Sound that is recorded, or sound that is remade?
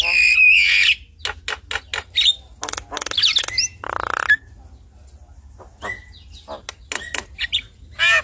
recorded